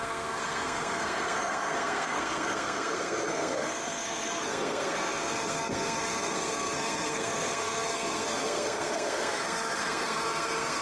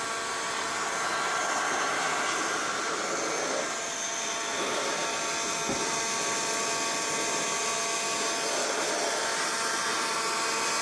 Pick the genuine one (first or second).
second